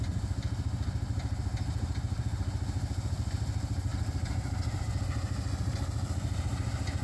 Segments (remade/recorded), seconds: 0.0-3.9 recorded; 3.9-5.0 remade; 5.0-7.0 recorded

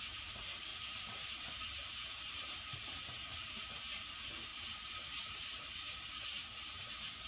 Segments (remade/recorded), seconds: 0.0-7.3 remade

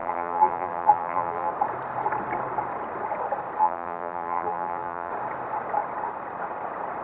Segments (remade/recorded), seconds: 0.0-1.5 remade; 1.5-3.6 recorded; 3.6-5.1 remade; 5.1-7.0 recorded

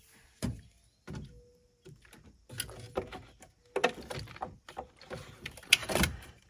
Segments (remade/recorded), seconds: 0.0-5.8 recorded; 5.8-6.5 remade

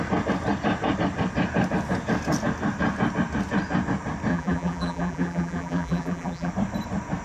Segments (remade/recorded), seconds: 0.0-4.3 recorded; 4.3-6.5 remade; 6.5-7.2 recorded

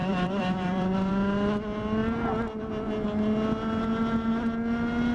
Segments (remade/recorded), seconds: 0.0-1.1 remade; 1.1-5.1 recorded